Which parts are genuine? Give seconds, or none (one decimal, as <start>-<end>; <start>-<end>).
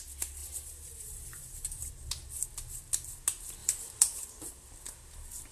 0.0-0.4; 1.9-3.6; 4.5-5.5